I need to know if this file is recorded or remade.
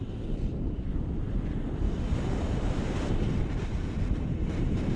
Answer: remade